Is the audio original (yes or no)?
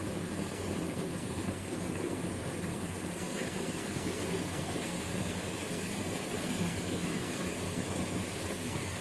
no